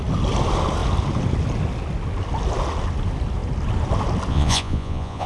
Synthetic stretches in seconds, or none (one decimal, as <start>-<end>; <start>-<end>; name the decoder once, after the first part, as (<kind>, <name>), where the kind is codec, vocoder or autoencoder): 4.3-5.3 (vocoder, Vocos)